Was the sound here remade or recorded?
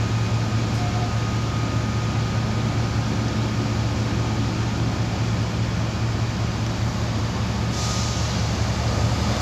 recorded